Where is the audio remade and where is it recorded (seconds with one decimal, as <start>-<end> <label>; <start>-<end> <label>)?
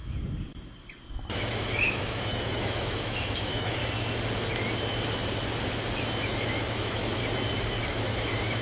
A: 0.0-1.1 recorded; 1.1-3.8 remade; 3.8-6.2 recorded; 6.2-7.2 remade; 7.2-7.9 recorded; 7.9-8.6 remade